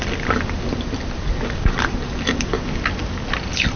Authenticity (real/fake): real